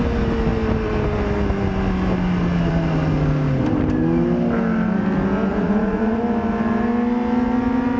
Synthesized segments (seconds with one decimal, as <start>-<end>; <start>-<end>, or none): 5.5-6.2